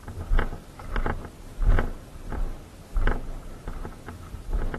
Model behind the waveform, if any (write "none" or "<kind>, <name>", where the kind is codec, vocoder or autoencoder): none